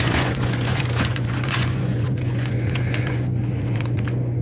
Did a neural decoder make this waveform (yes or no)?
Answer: yes